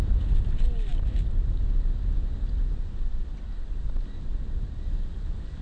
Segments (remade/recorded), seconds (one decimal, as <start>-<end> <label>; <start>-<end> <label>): 0.0-5.6 recorded